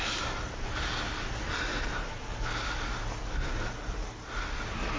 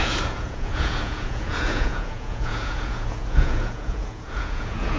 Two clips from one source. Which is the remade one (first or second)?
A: second